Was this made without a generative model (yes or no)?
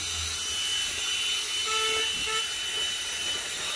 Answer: yes